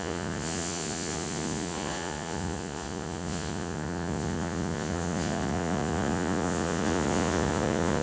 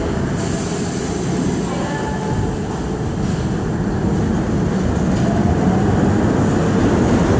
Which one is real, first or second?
second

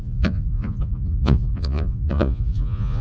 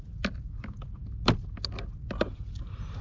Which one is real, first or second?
second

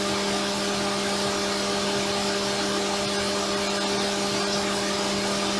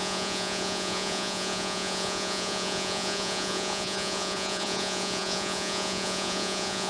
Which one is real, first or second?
first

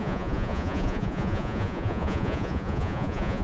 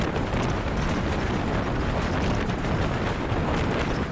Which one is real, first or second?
second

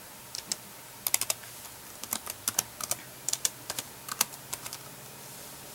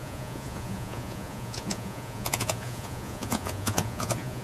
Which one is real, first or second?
first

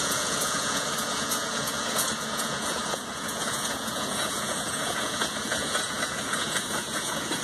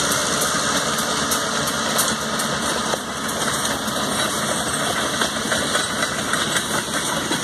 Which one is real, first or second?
second